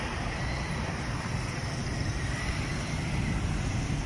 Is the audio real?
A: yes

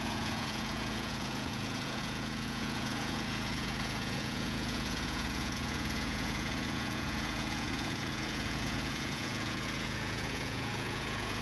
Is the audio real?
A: no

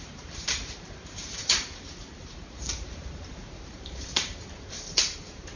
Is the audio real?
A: no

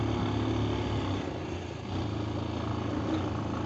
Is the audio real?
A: yes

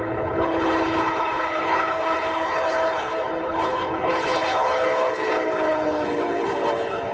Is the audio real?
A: no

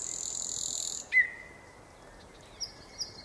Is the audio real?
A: yes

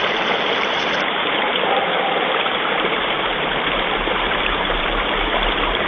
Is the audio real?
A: no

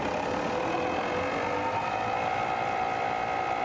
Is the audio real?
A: yes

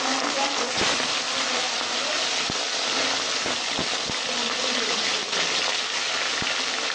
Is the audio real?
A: yes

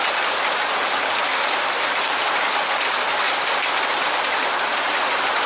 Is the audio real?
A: yes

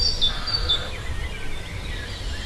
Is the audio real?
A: yes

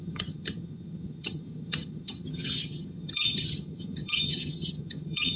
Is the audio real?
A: no